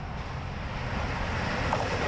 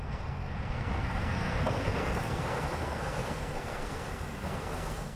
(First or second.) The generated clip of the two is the second